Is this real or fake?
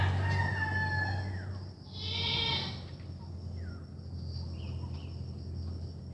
real